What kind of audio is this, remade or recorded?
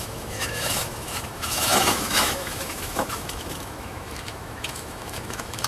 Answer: remade